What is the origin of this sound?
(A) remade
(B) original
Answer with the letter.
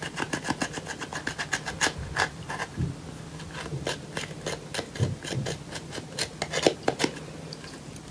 B